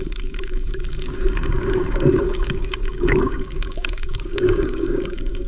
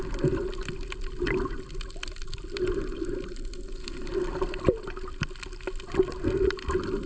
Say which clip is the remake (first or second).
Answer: first